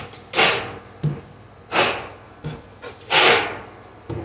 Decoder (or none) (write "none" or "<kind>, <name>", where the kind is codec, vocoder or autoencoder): none